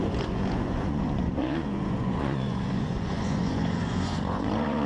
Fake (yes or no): yes